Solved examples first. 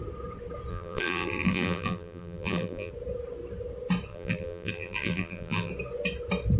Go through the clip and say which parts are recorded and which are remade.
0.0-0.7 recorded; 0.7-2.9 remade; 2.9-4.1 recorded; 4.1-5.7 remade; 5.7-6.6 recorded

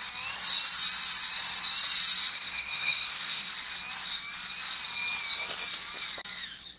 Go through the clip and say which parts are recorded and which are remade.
0.0-2.3 recorded; 2.3-3.5 remade; 3.5-6.8 recorded

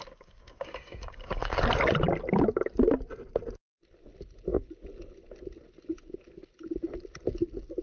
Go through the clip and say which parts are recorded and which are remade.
0.0-1.6 remade; 1.6-7.8 recorded

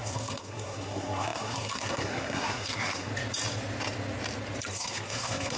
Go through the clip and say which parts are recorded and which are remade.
0.0-3.1 remade; 3.1-4.7 recorded; 4.7-5.6 remade

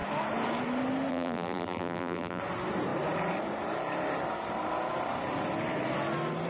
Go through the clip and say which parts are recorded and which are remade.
0.0-1.1 recorded; 1.1-2.4 remade; 2.4-6.5 recorded